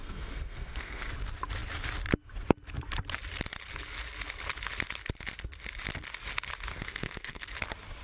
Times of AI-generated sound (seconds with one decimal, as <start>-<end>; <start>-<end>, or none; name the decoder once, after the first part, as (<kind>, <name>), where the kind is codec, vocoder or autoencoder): 0.0-1.1 (codec, SNAC); 6.7-7.5